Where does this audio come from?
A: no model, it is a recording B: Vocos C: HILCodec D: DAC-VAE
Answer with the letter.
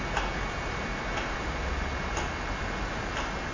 A